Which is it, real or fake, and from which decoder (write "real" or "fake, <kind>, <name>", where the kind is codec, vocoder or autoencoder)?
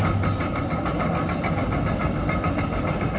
real